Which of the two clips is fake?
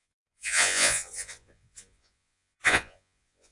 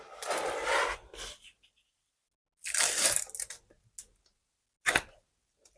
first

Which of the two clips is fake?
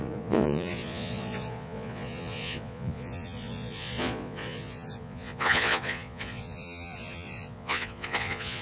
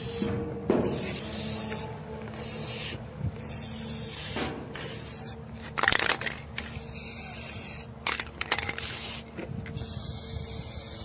first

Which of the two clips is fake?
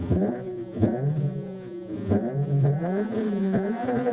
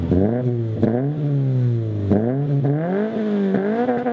first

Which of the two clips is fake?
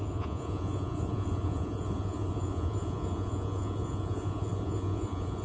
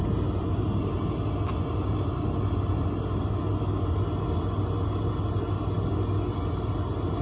first